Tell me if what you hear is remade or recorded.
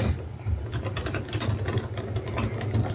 recorded